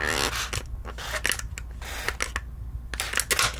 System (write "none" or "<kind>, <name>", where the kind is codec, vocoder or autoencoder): none